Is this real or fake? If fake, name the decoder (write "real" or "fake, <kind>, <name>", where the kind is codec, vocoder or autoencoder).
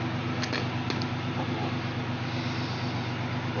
real